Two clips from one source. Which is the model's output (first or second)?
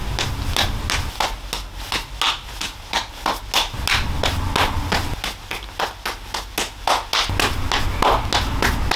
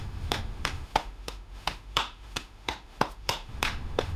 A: second